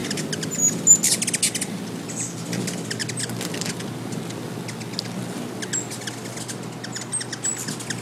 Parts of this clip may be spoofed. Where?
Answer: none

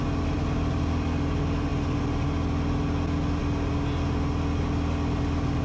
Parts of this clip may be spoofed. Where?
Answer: none

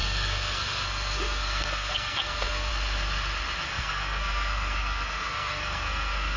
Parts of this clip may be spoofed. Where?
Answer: 0.0-2.7; 3.7-6.4

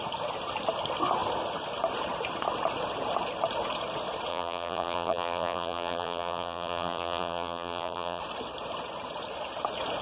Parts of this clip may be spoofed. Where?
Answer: 4.3-8.2

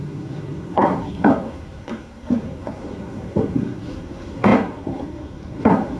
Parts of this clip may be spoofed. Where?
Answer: 0.0-6.0

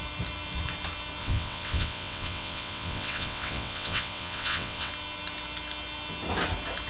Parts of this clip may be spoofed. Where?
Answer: 1.2-4.9

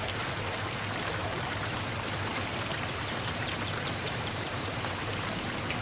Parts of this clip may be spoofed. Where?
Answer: 1.2-2.3; 2.7-5.0